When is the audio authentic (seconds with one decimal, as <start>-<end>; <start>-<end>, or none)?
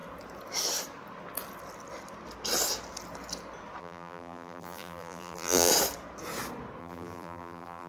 0.0-3.8; 5.7-6.8